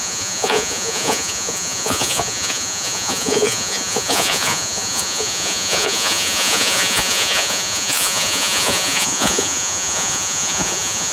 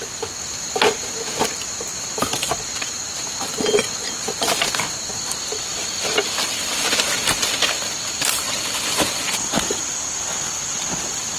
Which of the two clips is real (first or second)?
second